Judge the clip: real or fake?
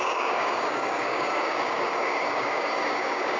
fake